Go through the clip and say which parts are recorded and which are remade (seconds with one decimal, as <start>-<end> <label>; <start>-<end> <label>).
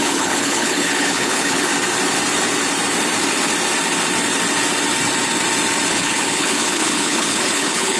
0.0-1.7 remade; 1.7-5.9 recorded; 5.9-8.0 remade